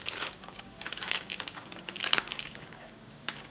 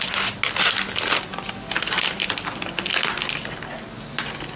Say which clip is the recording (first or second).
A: second